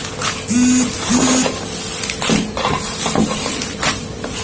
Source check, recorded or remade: recorded